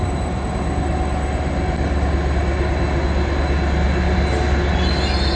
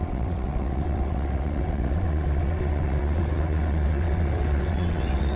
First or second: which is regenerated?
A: second